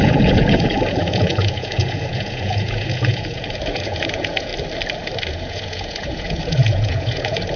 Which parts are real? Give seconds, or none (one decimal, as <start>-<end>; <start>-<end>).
4.5-5.3